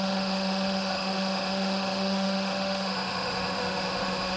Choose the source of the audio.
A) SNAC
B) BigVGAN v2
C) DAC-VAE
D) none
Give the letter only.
C